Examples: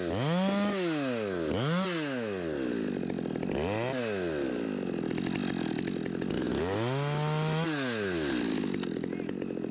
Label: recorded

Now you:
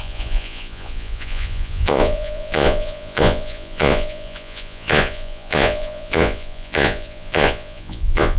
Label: remade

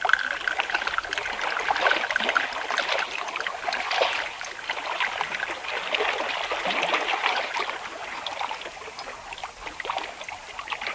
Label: recorded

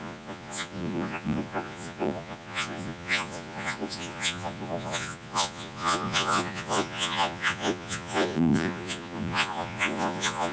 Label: remade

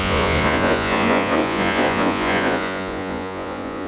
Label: remade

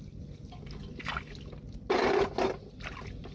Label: recorded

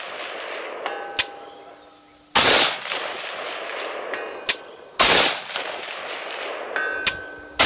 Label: recorded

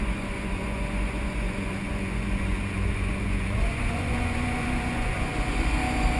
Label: remade